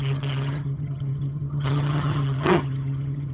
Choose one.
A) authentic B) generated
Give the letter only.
B